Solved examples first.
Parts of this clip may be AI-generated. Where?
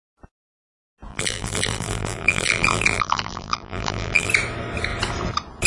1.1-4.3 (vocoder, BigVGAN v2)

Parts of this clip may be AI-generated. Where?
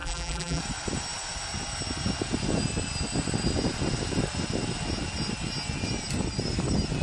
0.0-0.6 (vocoder, BigVGAN v2)